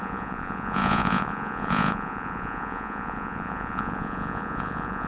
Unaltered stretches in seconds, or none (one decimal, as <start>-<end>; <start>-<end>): none